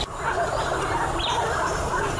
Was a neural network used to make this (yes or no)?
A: no